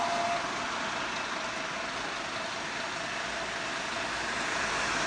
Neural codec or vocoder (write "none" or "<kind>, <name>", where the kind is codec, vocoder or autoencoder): none